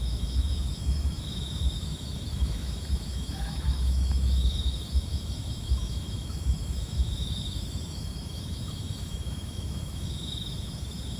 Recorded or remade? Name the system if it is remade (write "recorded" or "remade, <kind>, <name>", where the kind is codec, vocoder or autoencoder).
remade, autoencoder, DAC-VAE